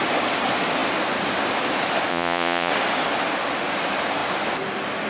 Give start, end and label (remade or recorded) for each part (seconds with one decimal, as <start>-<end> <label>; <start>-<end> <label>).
0.0-2.1 recorded; 2.1-2.7 remade; 2.7-5.1 recorded